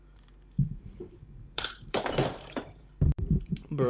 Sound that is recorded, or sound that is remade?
remade